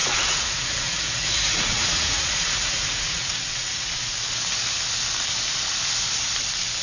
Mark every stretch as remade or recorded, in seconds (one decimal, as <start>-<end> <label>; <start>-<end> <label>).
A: 0.0-4.1 remade; 4.1-6.8 recorded